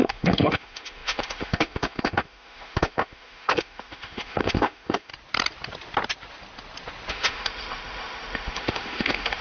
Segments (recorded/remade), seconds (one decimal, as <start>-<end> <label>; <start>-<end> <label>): 0.0-5.1 remade; 5.1-7.1 recorded; 7.1-9.4 remade